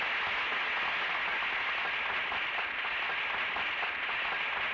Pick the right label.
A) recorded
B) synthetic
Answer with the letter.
A